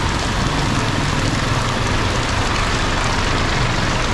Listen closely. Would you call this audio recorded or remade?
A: recorded